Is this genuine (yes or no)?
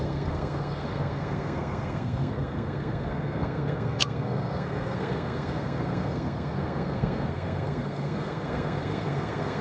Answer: no